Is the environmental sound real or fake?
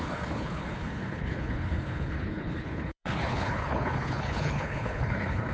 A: fake